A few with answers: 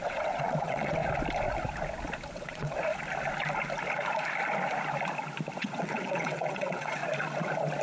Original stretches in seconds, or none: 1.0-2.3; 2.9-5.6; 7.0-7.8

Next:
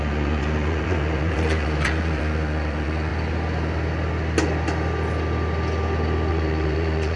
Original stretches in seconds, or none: 3.1-6.3

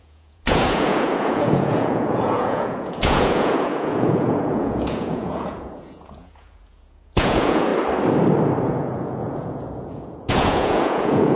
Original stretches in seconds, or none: 7.7-8.6